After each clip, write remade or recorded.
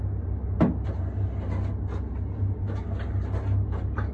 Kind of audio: recorded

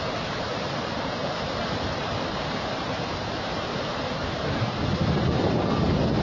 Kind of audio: remade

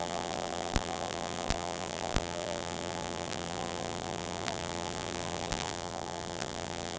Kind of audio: remade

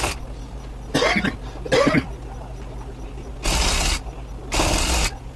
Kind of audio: recorded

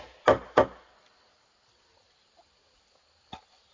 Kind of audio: recorded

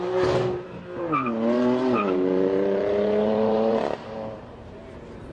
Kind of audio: remade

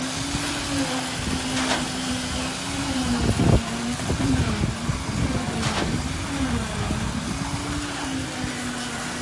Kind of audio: recorded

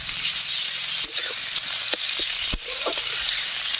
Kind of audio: remade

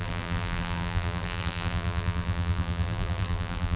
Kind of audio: remade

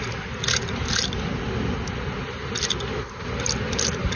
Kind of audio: recorded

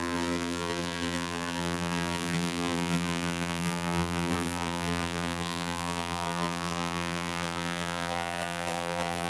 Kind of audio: remade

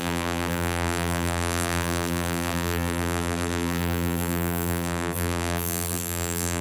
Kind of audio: remade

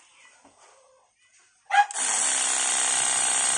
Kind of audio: recorded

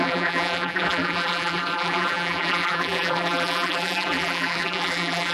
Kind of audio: remade